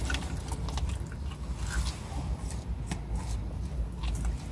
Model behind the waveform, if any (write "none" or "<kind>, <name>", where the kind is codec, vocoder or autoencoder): none